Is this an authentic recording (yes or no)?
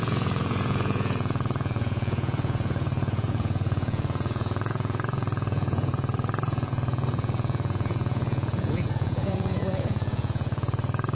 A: no